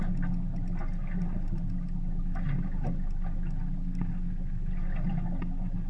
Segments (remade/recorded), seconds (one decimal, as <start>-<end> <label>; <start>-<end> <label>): 0.0-5.9 recorded